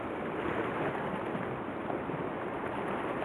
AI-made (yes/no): no